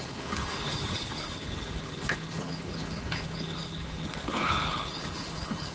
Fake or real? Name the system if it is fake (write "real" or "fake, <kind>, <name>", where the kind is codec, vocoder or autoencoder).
fake, codec, HILCodec